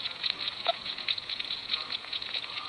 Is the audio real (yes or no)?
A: no